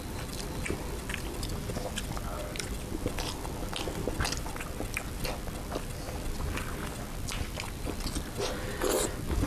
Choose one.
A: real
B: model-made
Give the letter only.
A